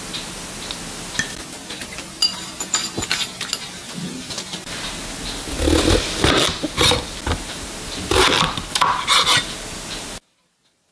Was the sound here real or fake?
real